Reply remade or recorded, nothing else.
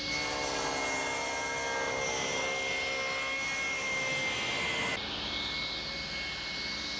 recorded